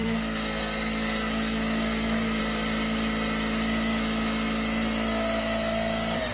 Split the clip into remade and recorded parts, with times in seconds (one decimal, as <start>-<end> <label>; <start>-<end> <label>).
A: 0.0-2.4 remade; 2.4-6.3 recorded